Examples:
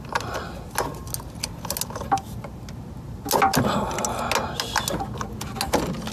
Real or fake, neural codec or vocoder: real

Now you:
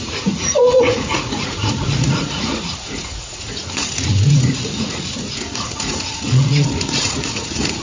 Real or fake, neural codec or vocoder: fake, vocoder, Vocos